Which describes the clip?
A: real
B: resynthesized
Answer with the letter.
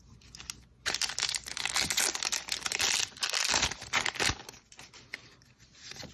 A